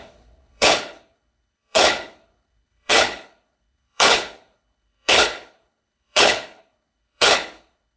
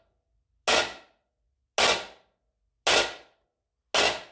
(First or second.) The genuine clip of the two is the second